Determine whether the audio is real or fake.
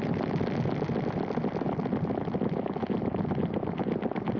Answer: real